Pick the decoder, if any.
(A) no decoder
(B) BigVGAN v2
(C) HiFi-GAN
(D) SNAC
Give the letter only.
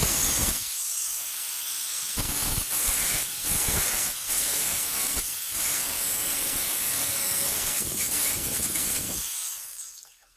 D